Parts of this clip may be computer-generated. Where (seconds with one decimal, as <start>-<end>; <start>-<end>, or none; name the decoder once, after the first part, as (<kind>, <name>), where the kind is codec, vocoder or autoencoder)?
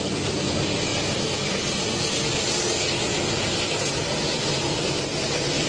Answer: none